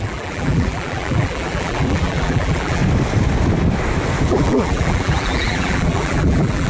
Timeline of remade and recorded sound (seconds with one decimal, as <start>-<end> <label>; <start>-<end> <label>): 0.0-2.8 remade; 2.8-4.3 recorded; 4.3-6.7 remade